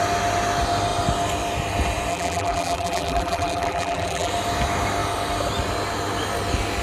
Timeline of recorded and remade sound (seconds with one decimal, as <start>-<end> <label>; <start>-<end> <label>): 0.0-2.1 recorded; 2.1-4.3 remade; 4.3-6.8 recorded